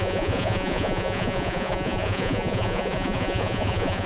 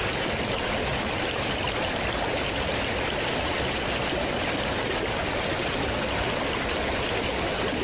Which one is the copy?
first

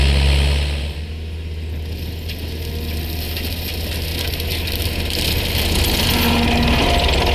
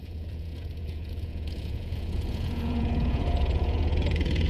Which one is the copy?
second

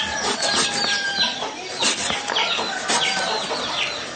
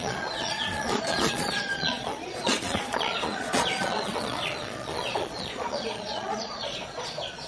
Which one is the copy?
second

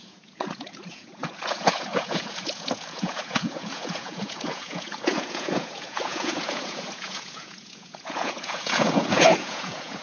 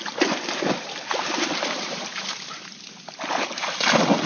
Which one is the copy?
first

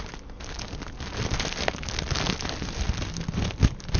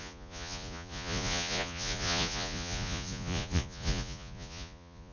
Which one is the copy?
second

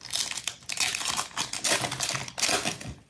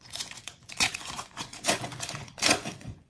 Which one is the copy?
second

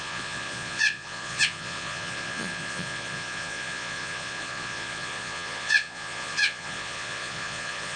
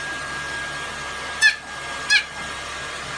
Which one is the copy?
first